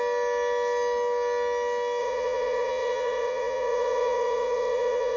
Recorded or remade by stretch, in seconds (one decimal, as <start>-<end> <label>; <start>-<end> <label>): 0.0-2.0 recorded; 2.0-5.2 remade